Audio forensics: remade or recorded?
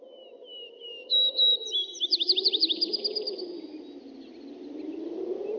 recorded